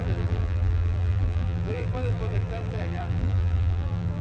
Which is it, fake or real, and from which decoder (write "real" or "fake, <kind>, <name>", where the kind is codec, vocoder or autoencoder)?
fake, vocoder, BigVGAN v2